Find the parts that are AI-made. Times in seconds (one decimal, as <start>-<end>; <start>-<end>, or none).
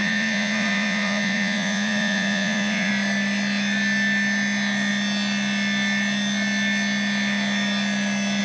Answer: 0.0-2.9